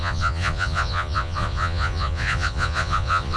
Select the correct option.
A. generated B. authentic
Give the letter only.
A